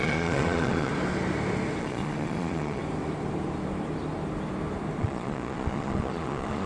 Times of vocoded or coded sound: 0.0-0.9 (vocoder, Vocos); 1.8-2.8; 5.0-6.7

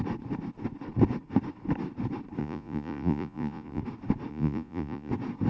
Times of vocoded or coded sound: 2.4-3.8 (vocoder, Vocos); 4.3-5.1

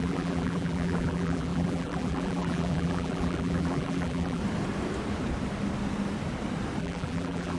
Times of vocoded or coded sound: 0.0-4.4 (vocoder, BigVGAN v2); 6.8-7.6

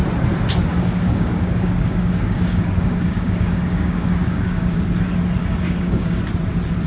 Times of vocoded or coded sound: 0.7-4.8 (codec, DAC); 5.4-6.2

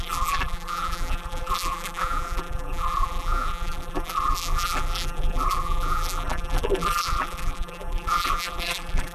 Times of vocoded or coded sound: 0.0-9.1 (vocoder, BigVGAN v2)